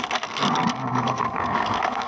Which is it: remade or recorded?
remade